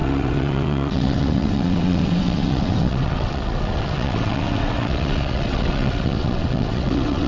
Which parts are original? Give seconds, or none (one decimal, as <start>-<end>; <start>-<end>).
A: none